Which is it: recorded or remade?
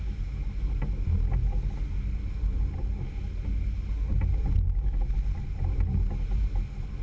recorded